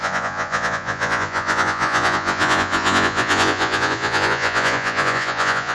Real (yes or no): no